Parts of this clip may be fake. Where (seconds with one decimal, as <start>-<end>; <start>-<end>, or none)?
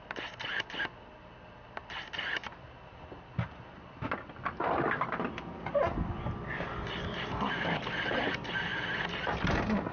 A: none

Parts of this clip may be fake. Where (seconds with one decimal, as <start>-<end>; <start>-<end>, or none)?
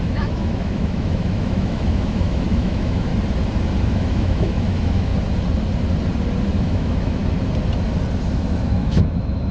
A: 0.0-3.1; 3.9-5.1; 6.5-7.2; 8.3-9.5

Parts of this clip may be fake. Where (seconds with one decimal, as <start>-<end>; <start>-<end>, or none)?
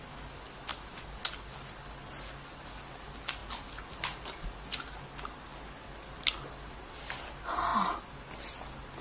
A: none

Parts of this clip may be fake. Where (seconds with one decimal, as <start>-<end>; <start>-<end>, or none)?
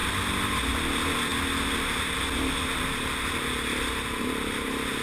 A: none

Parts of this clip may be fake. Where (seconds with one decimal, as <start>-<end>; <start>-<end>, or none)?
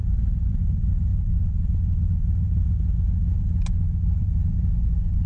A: none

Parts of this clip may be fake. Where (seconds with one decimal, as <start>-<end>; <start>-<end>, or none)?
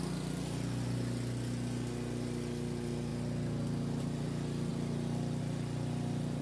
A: none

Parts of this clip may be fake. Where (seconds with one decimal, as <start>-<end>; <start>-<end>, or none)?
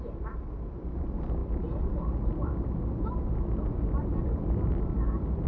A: none